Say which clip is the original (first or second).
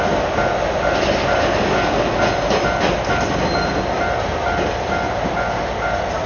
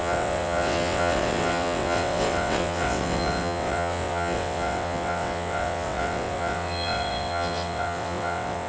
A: first